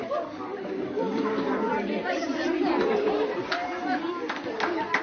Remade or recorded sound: recorded